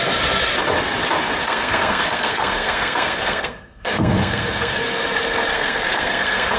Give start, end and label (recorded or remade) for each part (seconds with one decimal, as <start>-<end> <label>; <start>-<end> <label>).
0.0-1.4 recorded; 1.4-4.9 remade; 4.9-5.5 recorded; 5.5-6.6 remade